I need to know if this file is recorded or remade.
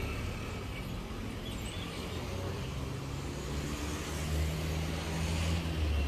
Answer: recorded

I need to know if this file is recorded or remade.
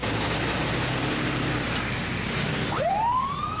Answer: recorded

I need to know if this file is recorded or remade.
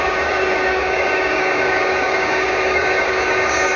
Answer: remade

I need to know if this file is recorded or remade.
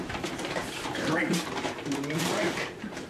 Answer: remade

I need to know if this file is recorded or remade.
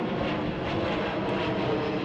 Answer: recorded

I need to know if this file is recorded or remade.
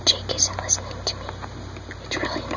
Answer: recorded